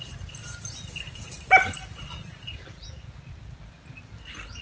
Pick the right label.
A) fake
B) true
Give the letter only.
B